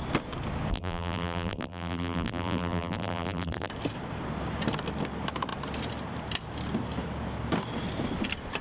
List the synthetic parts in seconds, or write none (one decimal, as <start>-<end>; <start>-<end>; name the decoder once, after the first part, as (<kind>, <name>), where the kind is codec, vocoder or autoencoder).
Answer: 0.7-3.7 (vocoder, BigVGAN v2)